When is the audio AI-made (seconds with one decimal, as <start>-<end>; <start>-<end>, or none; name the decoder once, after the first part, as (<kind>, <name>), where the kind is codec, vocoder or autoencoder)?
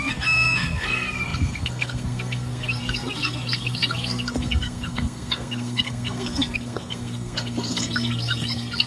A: 0.0-8.9 (codec, SNAC)